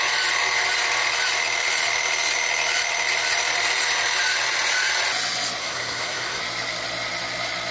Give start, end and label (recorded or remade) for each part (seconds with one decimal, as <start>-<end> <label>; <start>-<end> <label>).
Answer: 0.0-5.6 recorded; 5.6-6.4 remade; 6.4-7.7 recorded